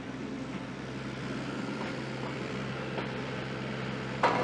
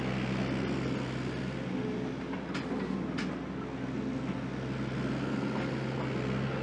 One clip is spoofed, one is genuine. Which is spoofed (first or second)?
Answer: first